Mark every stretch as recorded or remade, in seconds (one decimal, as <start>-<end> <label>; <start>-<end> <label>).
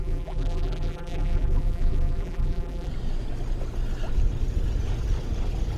0.0-2.9 remade; 2.9-5.8 recorded